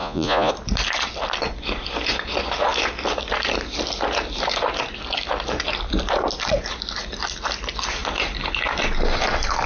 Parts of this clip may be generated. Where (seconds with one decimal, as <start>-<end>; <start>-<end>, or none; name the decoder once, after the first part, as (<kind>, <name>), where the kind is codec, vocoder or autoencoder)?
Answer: 0.0-0.5 (vocoder, Vocos)